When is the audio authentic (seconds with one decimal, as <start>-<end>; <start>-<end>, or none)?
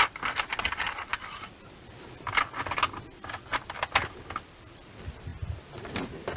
0.0-6.4